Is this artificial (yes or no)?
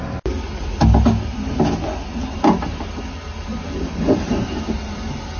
no